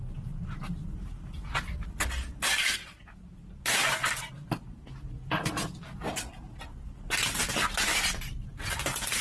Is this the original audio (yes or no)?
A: no